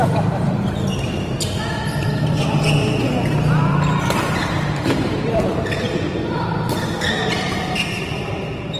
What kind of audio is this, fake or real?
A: fake